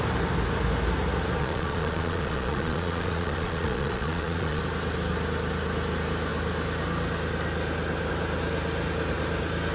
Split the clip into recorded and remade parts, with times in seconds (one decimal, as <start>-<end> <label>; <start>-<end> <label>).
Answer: 0.0-1.4 recorded; 1.4-4.6 remade; 4.6-9.7 recorded